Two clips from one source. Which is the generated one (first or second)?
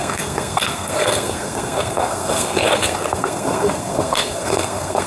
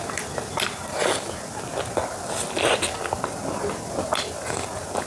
first